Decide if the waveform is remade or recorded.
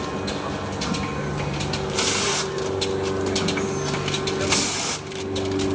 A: recorded